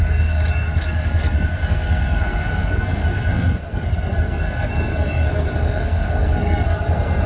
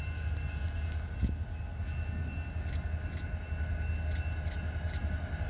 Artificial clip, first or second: first